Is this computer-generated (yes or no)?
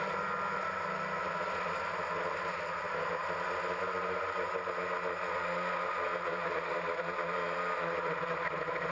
no